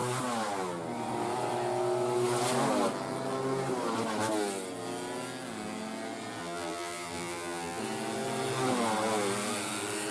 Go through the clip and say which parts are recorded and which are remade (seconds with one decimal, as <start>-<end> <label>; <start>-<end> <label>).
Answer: 0.0-6.4 recorded; 6.4-7.8 remade; 7.8-10.1 recorded